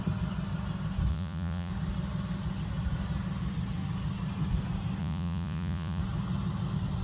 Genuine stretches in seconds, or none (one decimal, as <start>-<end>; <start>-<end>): 0.0-1.1; 1.7-5.0; 6.0-7.0